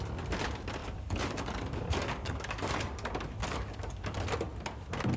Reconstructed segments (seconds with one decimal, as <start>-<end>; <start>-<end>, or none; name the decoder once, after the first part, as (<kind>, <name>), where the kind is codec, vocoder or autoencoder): 0.8-2.7 (codec, DAC); 3.4-4.2